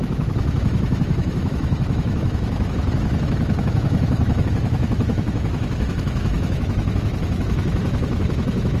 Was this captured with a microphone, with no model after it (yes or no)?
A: no